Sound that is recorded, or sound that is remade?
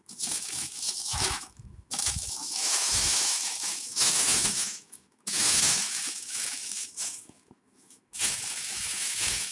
remade